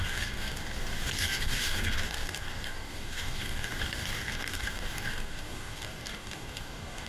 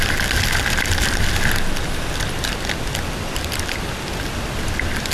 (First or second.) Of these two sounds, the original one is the second